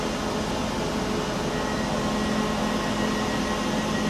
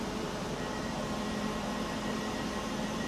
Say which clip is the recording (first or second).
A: first